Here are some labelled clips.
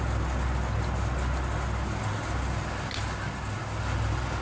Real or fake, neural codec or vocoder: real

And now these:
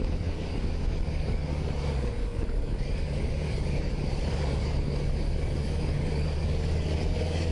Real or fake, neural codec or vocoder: fake, codec, DAC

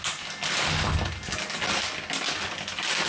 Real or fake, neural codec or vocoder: real